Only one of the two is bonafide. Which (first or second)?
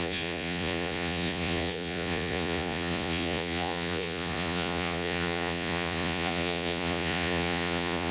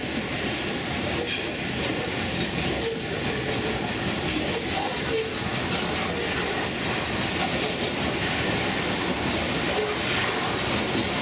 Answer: second